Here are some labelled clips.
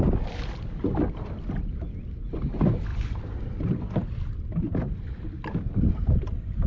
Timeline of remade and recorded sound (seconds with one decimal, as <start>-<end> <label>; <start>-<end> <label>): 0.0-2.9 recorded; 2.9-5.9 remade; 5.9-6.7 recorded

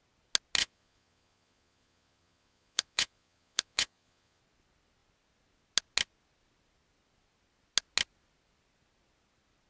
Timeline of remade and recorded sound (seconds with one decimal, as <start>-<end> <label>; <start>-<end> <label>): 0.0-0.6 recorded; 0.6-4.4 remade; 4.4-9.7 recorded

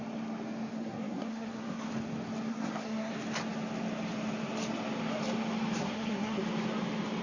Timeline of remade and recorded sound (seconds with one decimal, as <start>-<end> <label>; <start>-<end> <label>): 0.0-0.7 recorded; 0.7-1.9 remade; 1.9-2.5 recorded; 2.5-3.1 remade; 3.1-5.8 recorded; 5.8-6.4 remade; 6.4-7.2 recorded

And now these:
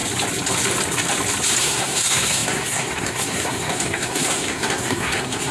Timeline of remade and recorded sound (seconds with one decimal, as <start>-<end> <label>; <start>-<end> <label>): 0.0-1.6 recorded; 1.6-5.5 remade

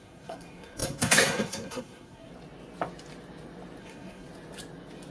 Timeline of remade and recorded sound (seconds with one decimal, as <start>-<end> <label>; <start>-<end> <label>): 0.0-2.3 remade; 2.3-3.8 recorded; 3.8-4.3 remade; 4.3-5.1 recorded

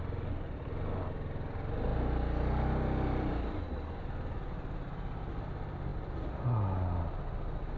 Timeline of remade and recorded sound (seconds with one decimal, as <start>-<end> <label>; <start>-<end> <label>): 0.0-7.8 recorded

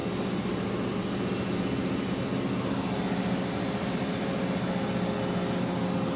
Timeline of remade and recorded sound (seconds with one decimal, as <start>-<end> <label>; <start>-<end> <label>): 0.0-3.5 recorded; 3.5-4.3 remade; 4.3-6.2 recorded